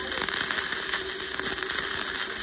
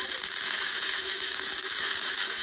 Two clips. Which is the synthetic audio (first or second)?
second